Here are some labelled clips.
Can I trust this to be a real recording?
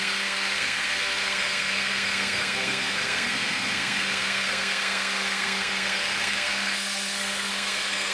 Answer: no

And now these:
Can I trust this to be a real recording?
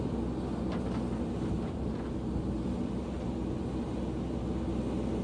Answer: yes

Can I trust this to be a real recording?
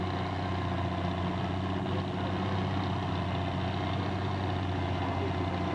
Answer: yes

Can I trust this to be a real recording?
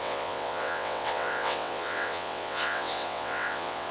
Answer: no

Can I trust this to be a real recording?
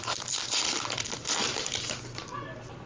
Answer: no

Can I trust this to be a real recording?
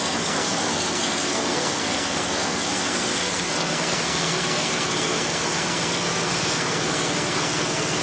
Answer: no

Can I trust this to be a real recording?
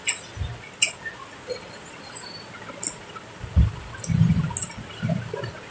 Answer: yes